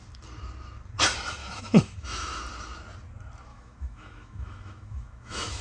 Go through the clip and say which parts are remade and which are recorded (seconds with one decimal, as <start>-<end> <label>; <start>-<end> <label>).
0.0-1.4 recorded; 1.4-2.4 remade; 2.4-3.5 recorded; 3.5-5.6 remade